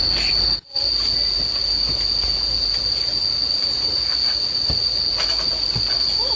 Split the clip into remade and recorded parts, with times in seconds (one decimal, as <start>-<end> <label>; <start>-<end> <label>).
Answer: 0.0-6.4 recorded